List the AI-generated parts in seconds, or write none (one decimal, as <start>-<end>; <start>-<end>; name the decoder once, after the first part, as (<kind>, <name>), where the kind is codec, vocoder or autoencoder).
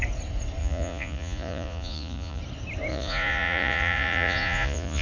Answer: 0.6-2.4 (vocoder, Vocos); 2.9-5.0